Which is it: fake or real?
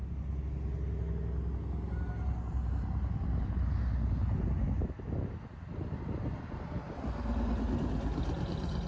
real